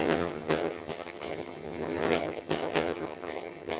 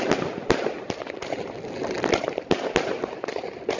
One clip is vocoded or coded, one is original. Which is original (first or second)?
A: second